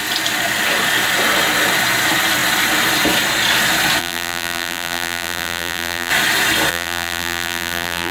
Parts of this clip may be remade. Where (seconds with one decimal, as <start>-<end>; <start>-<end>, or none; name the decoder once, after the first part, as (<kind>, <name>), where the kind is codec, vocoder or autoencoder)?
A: 4.0-6.1 (vocoder, BigVGAN v2); 6.7-8.1